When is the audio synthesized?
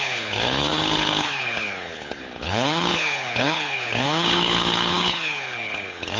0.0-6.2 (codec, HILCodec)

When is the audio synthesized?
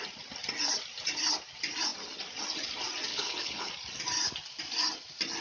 3.1-3.7 (codec, HILCodec)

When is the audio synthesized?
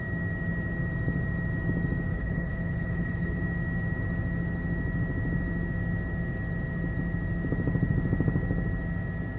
2.1-3.4 (codec, HILCodec)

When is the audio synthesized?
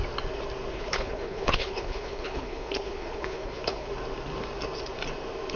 0.7-3.9 (codec, HILCodec)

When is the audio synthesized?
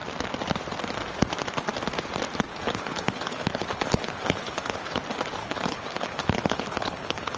2.5-5.0 (codec, HILCodec); 5.4-7.4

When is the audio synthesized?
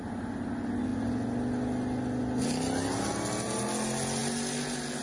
none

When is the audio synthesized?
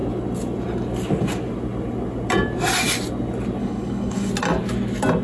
3.6-4.3 (codec, HILCodec)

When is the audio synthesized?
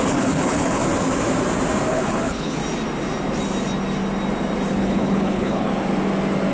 0.0-0.8 (codec, HILCodec); 1.9-2.6; 4.7-5.7